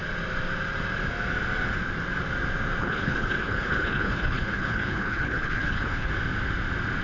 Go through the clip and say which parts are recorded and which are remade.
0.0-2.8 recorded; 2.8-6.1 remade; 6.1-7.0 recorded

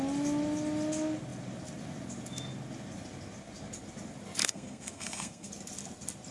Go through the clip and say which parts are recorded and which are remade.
0.0-4.4 recorded; 4.4-5.5 remade; 5.5-6.3 recorded

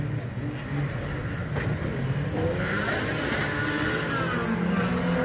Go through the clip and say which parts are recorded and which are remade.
0.0-5.2 recorded

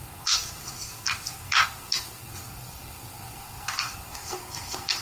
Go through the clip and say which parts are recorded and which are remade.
0.0-5.0 remade

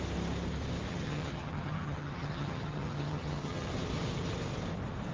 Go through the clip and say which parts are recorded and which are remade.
0.0-0.9 recorded; 0.9-3.7 remade; 3.7-5.1 recorded

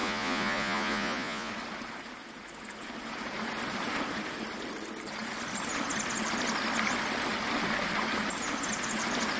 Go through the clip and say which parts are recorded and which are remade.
0.0-1.5 remade; 1.5-9.4 recorded

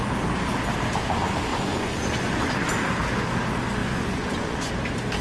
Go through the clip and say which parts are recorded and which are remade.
0.0-1.5 recorded; 1.5-2.5 remade; 2.5-3.8 recorded; 3.8-4.7 remade; 4.7-5.2 recorded